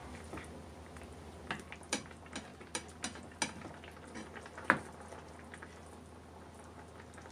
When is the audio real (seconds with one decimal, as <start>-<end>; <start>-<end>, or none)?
0.0-7.3